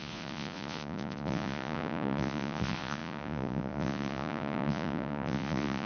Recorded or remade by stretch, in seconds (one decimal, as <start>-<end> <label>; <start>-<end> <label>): 0.0-5.9 remade